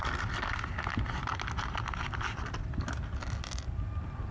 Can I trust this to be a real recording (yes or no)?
yes